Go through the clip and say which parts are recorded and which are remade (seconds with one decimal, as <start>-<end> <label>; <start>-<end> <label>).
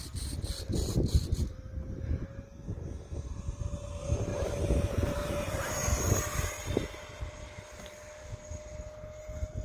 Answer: 0.0-4.3 recorded; 4.3-7.6 remade; 7.6-9.6 recorded